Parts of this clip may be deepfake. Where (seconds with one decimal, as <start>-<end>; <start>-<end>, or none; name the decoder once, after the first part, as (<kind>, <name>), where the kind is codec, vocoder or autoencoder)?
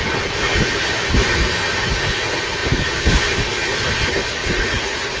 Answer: 4.4-5.2 (vocoder, Vocos)